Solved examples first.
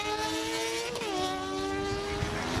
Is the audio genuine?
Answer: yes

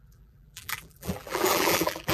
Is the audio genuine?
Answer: no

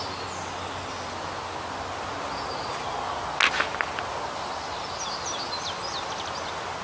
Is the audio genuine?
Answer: yes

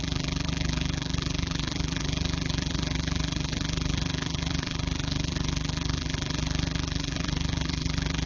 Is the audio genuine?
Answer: no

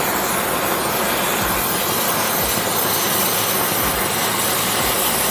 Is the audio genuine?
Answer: yes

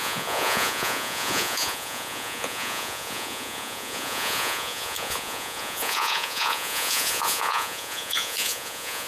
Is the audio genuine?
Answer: no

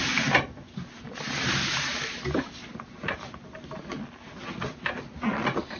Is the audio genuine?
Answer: yes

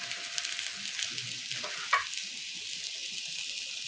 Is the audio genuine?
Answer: yes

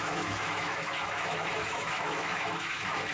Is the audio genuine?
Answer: no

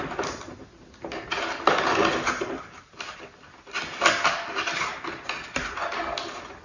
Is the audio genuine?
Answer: yes